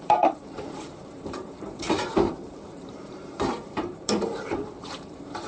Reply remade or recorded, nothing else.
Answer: remade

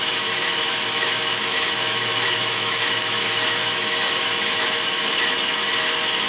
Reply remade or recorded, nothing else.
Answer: remade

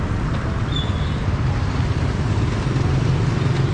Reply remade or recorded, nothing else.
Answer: recorded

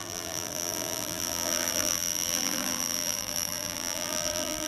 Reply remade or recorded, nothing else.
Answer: remade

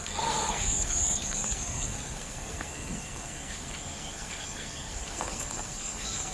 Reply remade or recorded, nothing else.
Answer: remade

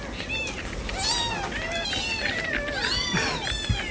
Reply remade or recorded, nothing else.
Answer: recorded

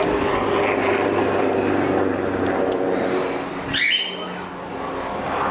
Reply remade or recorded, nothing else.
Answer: recorded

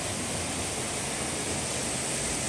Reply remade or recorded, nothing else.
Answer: recorded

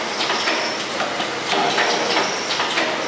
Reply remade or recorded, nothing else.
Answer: recorded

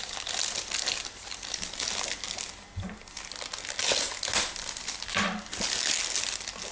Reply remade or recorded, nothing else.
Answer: recorded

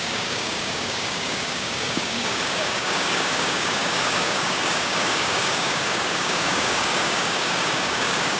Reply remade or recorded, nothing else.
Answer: remade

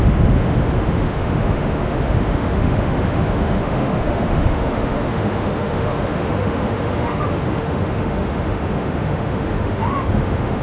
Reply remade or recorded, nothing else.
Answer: remade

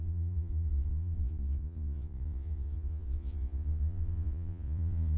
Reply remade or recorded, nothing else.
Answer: remade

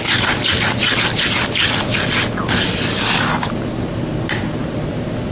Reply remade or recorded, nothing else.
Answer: recorded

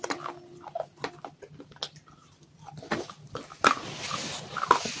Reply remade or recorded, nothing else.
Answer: recorded